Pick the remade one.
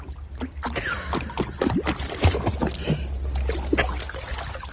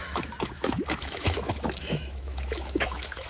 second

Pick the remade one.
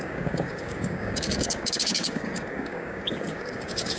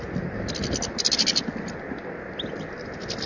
first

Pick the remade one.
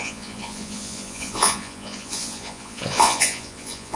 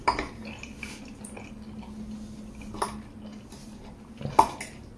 first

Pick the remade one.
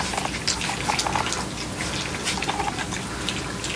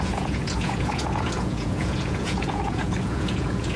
second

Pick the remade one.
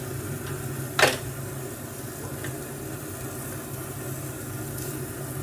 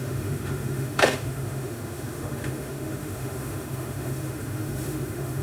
second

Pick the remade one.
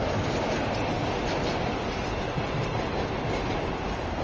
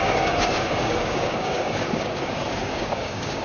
second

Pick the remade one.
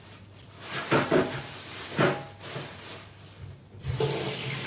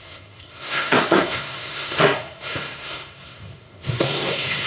second